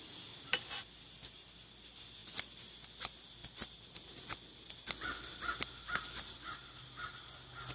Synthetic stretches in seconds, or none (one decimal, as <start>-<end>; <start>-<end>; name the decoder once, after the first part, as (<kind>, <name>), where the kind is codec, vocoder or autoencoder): none